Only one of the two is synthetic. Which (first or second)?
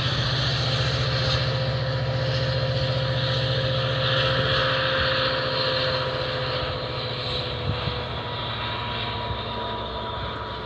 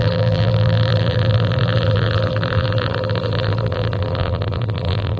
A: second